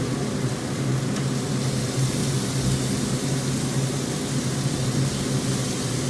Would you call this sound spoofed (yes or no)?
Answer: no